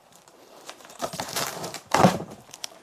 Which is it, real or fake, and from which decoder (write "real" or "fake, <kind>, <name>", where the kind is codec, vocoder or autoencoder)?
fake, vocoder, BigVGAN v2